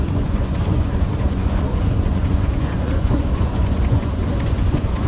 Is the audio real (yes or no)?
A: no